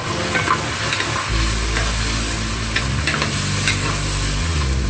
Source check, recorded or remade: recorded